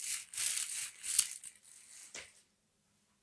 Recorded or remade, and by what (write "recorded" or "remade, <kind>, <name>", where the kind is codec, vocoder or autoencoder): recorded